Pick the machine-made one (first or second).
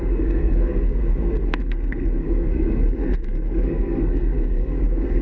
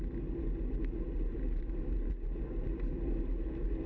first